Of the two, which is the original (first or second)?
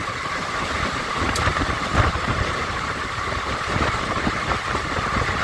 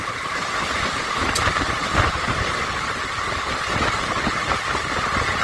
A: second